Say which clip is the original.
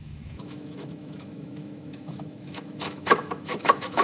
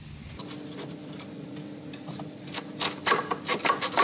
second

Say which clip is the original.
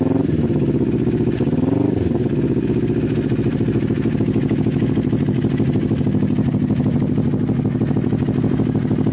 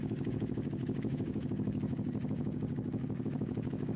first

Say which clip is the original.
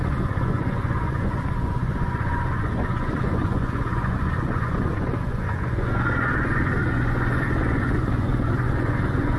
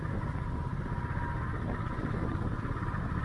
second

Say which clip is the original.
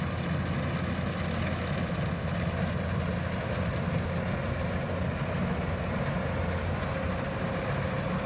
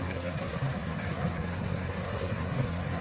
first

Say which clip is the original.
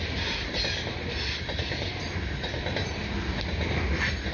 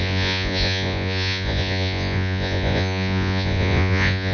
first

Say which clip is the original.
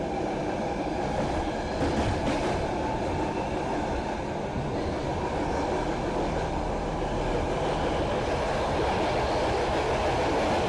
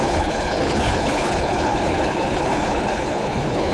first